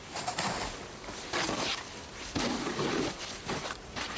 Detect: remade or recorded recorded